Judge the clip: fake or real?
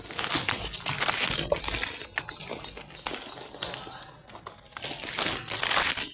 real